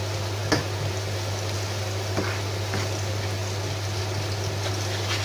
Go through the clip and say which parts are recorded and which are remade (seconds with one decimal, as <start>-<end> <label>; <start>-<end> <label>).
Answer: 0.0-5.2 recorded